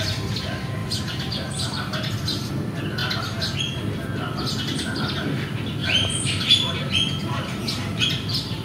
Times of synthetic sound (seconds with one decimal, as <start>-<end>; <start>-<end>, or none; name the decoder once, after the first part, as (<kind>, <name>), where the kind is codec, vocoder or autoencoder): 0.8-2.5 (vocoder, BigVGAN v2); 5.8-6.5; 7.2-8.0